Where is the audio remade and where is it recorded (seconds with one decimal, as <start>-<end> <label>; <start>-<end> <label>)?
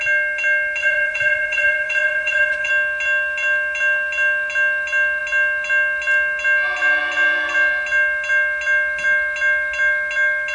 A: 0.0-0.8 recorded; 0.8-2.7 remade; 2.7-10.5 recorded